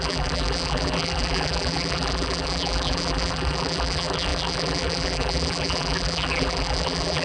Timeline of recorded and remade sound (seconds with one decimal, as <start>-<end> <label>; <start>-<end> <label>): 0.0-7.2 remade